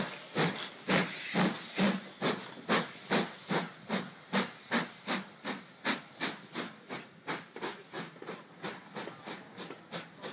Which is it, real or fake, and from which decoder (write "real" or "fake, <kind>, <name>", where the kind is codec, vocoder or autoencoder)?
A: real